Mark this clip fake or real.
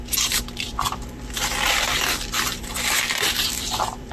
fake